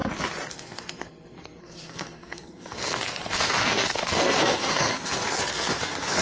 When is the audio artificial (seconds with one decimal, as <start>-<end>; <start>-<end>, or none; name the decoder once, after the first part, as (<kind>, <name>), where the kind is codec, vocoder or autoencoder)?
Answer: 0.5-6.2 (codec, SNAC)